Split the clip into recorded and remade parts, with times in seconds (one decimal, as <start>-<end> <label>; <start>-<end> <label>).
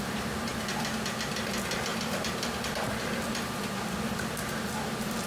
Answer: 0.0-5.3 recorded